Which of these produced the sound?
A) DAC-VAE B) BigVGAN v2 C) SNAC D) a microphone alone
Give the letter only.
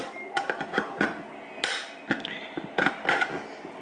D